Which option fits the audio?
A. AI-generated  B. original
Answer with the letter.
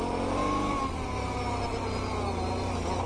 B